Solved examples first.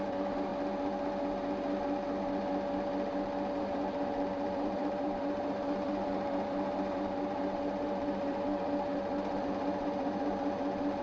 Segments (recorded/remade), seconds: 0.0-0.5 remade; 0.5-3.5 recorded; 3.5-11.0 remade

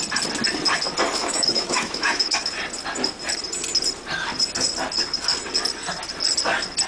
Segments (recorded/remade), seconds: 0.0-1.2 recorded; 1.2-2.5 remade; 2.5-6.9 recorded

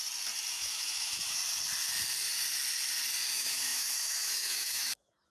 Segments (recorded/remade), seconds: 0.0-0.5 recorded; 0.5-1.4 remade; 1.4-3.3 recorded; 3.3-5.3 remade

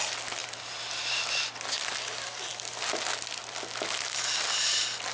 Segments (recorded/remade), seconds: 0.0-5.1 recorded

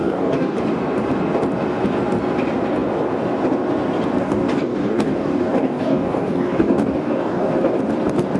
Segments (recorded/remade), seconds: 0.0-0.6 remade; 0.6-4.2 recorded; 4.2-7.5 remade; 7.5-8.4 recorded

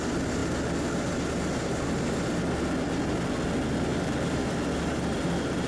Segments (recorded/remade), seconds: 0.0-3.9 recorded; 3.9-4.4 remade; 4.4-5.7 recorded

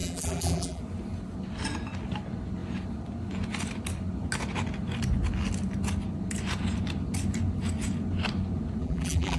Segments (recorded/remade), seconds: 0.0-0.8 remade; 0.8-8.8 recorded; 8.8-9.4 remade